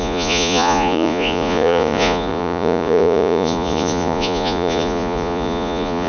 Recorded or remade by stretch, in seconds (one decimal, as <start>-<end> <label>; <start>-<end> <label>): 0.0-6.1 remade